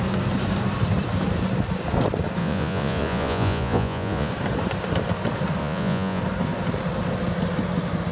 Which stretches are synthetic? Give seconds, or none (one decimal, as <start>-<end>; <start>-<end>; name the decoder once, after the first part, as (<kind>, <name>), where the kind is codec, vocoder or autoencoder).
2.4-4.3 (vocoder, Vocos); 5.6-6.2